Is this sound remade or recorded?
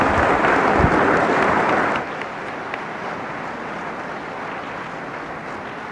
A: recorded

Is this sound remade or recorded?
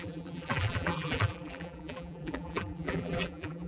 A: remade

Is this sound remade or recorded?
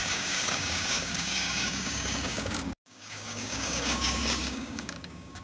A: remade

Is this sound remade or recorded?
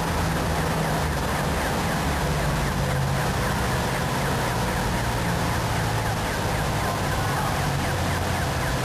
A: recorded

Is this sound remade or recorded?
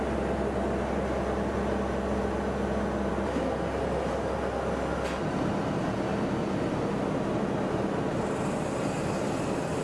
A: recorded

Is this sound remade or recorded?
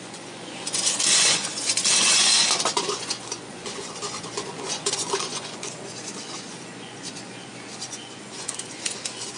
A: remade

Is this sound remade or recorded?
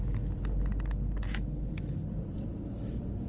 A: recorded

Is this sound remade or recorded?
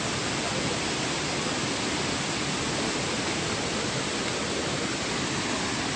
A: recorded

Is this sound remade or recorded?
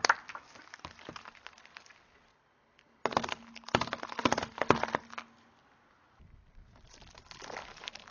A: recorded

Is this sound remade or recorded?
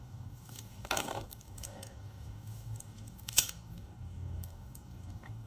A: remade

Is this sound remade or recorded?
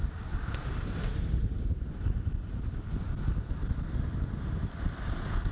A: recorded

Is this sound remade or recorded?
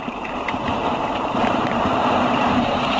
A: remade